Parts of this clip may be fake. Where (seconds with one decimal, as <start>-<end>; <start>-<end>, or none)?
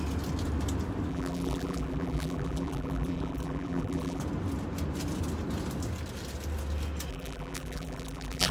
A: 1.1-4.2; 7.1-8.5